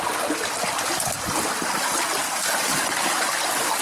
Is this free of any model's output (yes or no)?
yes